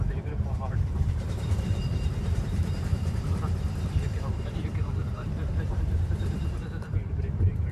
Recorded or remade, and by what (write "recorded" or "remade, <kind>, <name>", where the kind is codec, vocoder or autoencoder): remade, vocoder, BigVGAN v2